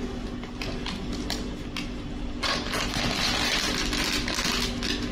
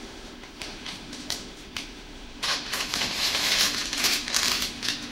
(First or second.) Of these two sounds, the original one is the first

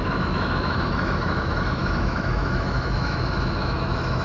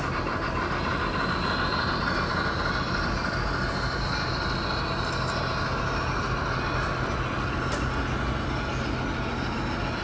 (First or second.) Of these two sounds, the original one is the second